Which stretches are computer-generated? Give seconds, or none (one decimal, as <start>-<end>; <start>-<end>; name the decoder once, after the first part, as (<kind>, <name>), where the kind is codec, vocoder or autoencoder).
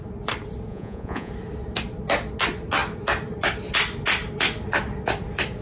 0.7-1.3 (vocoder, Vocos)